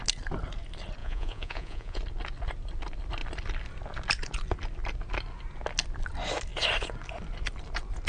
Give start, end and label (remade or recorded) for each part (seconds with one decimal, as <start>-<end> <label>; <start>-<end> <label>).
0.0-1.0 recorded; 1.0-2.0 remade; 2.0-8.1 recorded